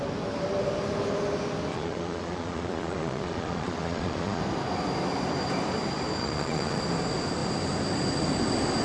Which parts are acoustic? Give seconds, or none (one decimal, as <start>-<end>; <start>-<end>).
0.0-1.7; 4.4-6.2; 6.8-8.8